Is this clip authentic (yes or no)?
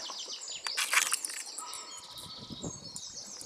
yes